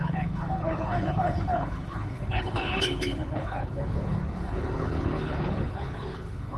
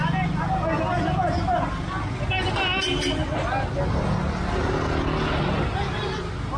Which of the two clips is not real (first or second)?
first